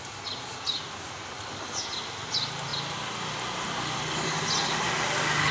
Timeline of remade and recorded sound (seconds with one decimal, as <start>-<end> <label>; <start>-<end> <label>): 0.0-5.5 recorded